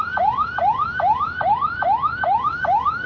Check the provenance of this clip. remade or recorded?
remade